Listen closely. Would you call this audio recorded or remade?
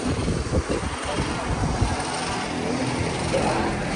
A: recorded